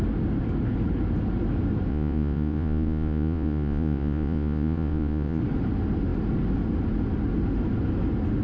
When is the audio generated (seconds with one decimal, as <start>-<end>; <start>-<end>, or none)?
1.9-5.4